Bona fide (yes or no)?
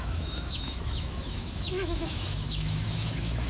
no